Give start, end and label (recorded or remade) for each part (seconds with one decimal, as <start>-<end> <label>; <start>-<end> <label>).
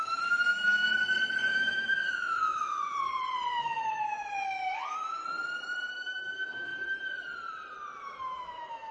0.0-1.0 remade; 1.0-1.5 recorded; 1.5-2.9 remade; 2.9-3.6 recorded; 3.6-5.2 remade; 5.2-5.9 recorded; 5.9-6.7 remade; 6.7-8.2 recorded; 8.2-8.9 remade